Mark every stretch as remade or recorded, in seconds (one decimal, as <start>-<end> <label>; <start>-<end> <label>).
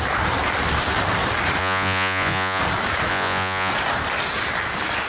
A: 0.0-1.6 recorded; 1.6-2.6 remade; 2.6-3.1 recorded; 3.1-3.7 remade; 3.7-5.1 recorded